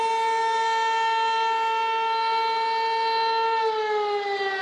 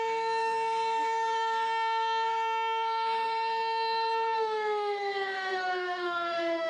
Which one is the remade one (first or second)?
second